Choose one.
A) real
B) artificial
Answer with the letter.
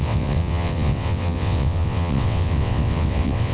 B